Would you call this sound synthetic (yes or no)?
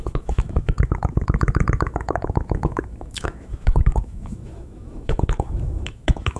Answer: yes